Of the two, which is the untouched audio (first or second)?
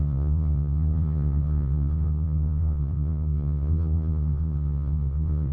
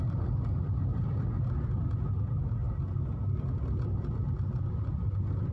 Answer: second